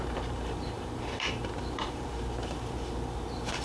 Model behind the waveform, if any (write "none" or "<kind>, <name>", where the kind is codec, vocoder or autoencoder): vocoder, BigVGAN v2